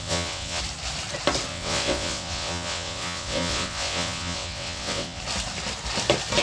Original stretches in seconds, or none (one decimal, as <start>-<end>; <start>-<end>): 0.6-1.5; 5.2-6.4